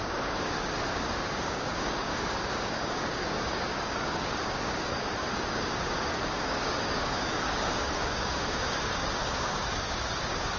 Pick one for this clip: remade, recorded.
remade